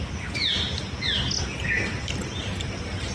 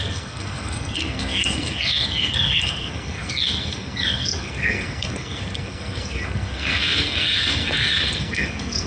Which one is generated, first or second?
second